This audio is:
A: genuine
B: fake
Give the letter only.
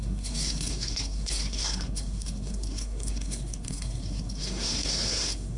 B